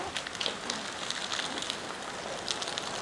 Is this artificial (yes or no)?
no